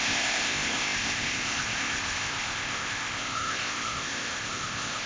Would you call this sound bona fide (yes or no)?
no